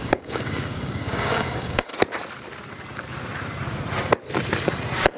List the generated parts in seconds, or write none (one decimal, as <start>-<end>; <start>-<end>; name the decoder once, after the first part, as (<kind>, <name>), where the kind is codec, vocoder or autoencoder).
0.0-1.9 (codec, DAC)